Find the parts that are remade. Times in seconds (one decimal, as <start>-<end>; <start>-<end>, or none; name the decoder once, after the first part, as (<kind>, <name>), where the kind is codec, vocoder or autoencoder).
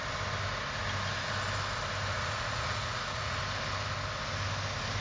2.1-3.4 (vocoder, Vocos)